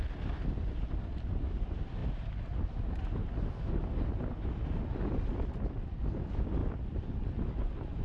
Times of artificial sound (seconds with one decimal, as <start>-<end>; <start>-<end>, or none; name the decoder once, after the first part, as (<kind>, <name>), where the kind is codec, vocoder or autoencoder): none